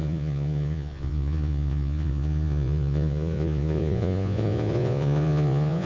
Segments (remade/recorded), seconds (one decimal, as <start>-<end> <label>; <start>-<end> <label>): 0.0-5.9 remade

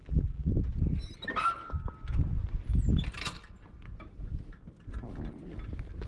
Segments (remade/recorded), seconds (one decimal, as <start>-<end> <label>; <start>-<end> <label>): 0.0-0.5 remade; 0.5-6.1 recorded

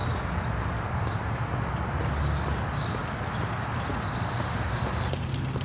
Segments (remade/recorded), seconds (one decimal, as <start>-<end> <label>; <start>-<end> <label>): 0.0-4.3 recorded; 4.3-4.9 remade; 4.9-5.6 recorded

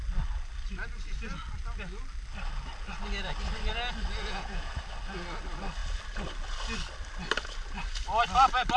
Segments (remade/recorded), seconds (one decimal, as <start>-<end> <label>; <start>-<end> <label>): 0.0-4.2 recorded; 4.2-4.7 remade; 4.7-8.8 recorded

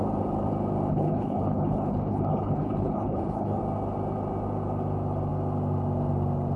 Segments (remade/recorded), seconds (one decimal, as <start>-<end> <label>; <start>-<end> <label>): 0.0-0.9 recorded; 0.9-3.6 remade; 3.6-6.6 recorded